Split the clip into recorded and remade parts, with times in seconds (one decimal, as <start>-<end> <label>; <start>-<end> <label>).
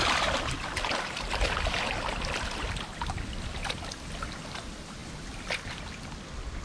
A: 0.0-6.6 recorded